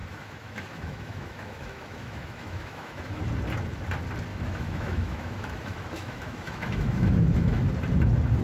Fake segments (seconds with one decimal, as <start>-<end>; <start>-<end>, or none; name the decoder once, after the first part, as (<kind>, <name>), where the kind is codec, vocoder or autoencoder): 0.0-3.2 (autoencoder, DAC-VAE); 4.3-7.7